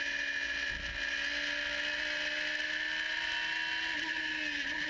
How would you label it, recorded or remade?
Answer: recorded